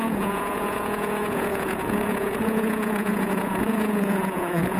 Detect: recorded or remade remade